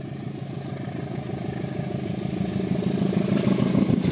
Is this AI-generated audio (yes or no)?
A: no